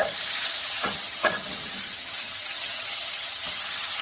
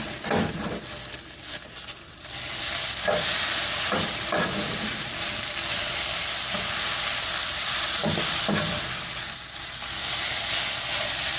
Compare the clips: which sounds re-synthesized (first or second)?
first